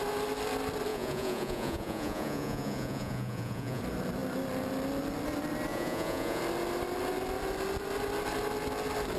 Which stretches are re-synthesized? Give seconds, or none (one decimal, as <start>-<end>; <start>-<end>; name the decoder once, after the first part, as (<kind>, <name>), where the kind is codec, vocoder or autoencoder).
0.9-3.8 (vocoder, Vocos); 5.7-6.4